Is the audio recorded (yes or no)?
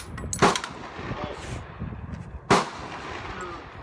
yes